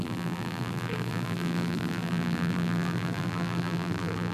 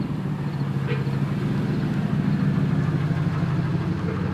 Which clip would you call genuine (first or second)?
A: second